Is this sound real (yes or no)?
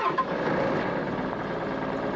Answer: yes